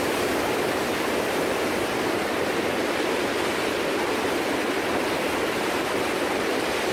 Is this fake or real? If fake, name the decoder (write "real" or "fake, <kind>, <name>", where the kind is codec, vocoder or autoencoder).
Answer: real